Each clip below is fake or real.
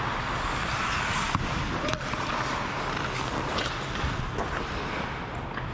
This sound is real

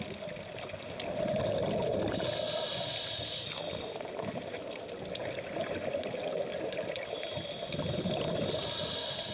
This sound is real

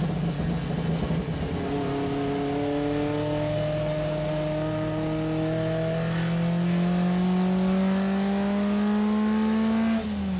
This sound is real